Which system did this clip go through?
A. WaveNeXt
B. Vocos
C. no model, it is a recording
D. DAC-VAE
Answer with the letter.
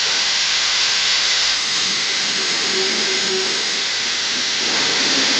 D